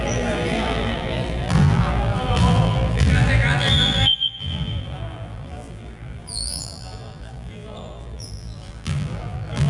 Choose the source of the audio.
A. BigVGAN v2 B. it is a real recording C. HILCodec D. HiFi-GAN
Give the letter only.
A